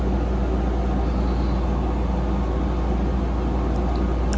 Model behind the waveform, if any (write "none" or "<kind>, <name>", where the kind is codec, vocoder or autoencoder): none